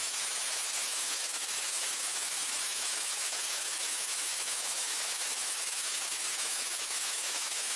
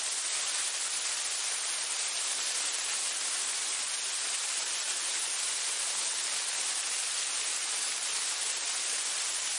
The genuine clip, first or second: second